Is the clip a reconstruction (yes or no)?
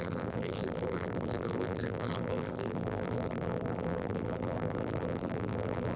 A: yes